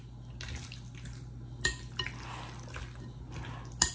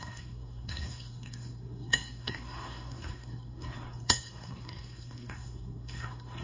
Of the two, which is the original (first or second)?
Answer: first